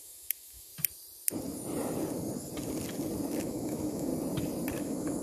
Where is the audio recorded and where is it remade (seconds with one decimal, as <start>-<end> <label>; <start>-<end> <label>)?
0.0-0.7 remade; 0.7-3.4 recorded; 3.4-4.1 remade; 4.1-4.8 recorded; 4.8-5.2 remade